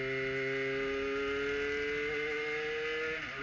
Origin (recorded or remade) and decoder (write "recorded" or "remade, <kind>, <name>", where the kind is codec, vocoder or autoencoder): recorded